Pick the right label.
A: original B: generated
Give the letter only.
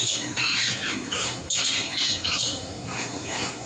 B